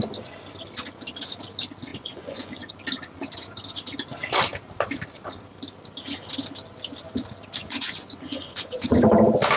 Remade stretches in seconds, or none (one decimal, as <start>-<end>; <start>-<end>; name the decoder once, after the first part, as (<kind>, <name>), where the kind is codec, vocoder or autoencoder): 1.9-2.7 (vocoder, Vocos); 7.6-9.0